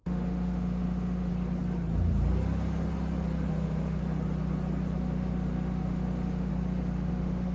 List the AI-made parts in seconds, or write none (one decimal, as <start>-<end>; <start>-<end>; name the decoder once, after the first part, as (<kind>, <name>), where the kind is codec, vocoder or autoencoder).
0.0-1.3 (autoencoder, DAC-VAE); 3.5-4.0; 5.0-6.5; 7.1-7.5